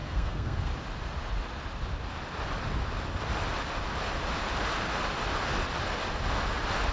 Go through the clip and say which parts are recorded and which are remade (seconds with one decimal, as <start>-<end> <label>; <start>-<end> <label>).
0.0-0.7 remade; 0.7-6.9 recorded